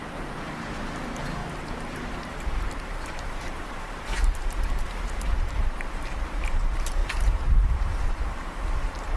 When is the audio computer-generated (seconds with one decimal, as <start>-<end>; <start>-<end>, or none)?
0.0-0.7; 1.4-5.9; 7.0-8.2